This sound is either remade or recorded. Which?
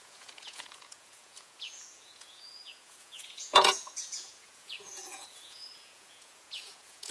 remade